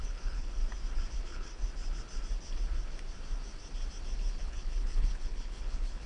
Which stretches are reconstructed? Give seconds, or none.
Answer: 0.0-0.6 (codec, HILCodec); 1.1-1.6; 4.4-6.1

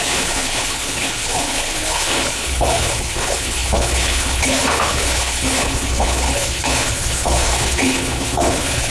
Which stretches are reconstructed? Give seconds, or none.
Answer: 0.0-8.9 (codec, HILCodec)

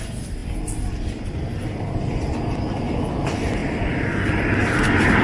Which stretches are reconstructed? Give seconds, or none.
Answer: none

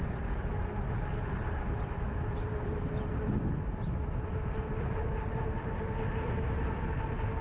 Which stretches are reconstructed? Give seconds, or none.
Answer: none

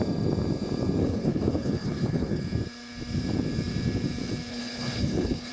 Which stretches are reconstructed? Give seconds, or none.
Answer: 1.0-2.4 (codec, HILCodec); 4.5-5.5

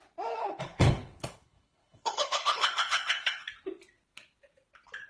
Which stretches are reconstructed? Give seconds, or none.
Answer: 0.4-3.5 (codec, HILCodec)

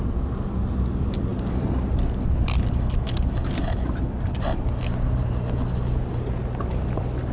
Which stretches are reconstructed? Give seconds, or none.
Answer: none